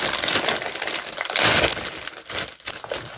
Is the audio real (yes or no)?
yes